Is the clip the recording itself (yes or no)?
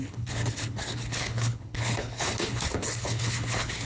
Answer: no